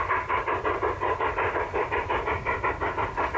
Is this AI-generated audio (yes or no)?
no